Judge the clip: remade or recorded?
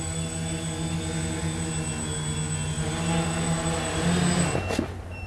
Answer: recorded